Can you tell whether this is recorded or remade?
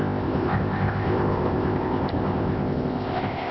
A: remade